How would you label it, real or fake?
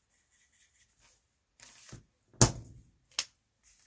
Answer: real